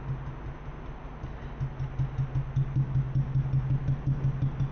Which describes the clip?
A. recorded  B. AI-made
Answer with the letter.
A